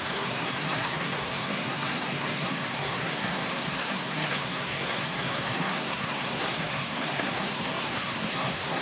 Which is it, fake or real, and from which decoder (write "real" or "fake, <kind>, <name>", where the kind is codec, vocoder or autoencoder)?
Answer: fake, codec, SNAC